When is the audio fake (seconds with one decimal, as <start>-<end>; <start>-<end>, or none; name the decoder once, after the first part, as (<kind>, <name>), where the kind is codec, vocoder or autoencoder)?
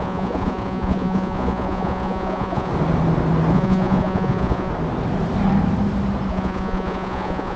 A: 0.0-2.7 (vocoder, Vocos); 3.5-4.7; 6.3-7.6